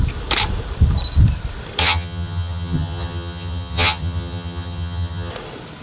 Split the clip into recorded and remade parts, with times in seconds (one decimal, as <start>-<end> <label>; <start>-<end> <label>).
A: 0.0-1.8 recorded; 1.8-5.3 remade; 5.3-5.8 recorded